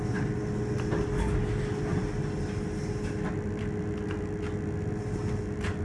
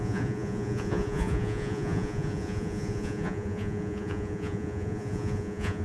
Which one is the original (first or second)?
first